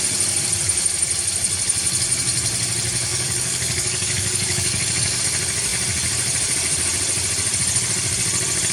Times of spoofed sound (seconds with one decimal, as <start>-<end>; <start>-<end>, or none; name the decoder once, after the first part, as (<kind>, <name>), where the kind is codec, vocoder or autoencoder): 3.1-5.2 (codec, DAC)